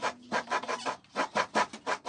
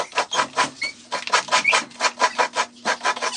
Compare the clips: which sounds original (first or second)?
second